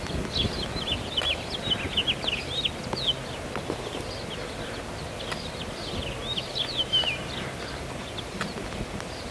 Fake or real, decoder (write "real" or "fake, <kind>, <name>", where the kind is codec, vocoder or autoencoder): real